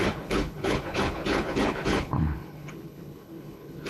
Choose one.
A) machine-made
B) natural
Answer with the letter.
A